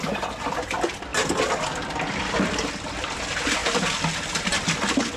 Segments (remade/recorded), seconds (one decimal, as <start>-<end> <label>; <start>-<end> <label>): 0.0-5.2 recorded

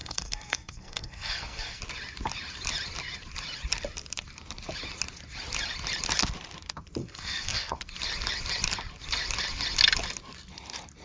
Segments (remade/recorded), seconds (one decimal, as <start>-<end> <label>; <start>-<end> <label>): 0.0-1.8 remade; 1.8-7.0 recorded; 7.0-7.8 remade; 7.8-11.0 recorded

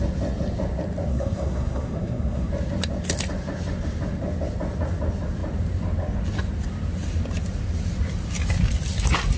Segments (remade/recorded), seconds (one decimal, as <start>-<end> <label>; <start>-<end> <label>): 0.0-1.1 recorded; 1.1-2.5 remade; 2.5-9.4 recorded

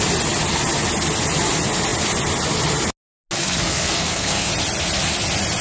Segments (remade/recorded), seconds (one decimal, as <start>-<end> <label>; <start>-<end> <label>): 0.0-3.4 recorded; 3.4-4.5 remade; 4.5-5.6 recorded

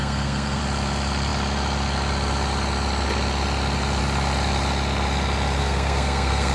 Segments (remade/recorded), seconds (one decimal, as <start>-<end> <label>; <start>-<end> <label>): 0.0-0.6 remade; 0.6-5.6 recorded; 5.6-6.5 remade

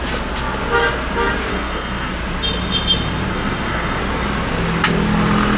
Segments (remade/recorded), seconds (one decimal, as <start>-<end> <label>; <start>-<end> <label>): 0.0-1.5 recorded; 1.5-2.1 remade; 2.1-3.3 recorded; 3.3-4.0 remade; 4.0-5.6 recorded

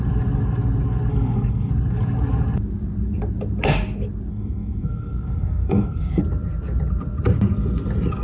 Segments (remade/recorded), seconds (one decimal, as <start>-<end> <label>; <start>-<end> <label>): 0.0-1.1 recorded; 1.1-1.7 remade; 1.7-4.3 recorded; 4.3-6.2 remade; 6.2-8.2 recorded

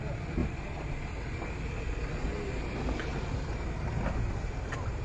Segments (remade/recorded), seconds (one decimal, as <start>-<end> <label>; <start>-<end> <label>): 0.0-5.0 recorded